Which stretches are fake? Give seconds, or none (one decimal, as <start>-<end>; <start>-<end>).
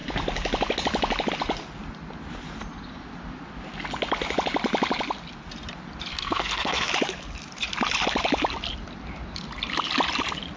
6.1-6.9